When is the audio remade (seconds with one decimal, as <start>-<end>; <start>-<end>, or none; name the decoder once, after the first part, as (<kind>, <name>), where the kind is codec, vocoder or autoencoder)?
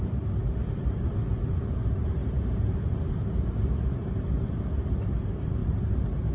0.0-0.4 (vocoder, BigVGAN v2); 1.0-6.3